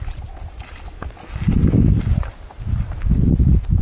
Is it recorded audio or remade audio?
recorded